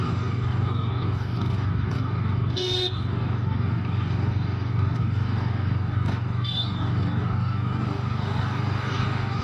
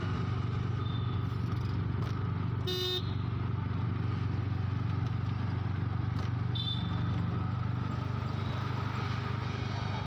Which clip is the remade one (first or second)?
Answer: first